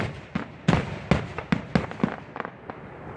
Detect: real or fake real